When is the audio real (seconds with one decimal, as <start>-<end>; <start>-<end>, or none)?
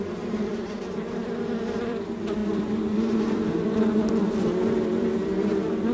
none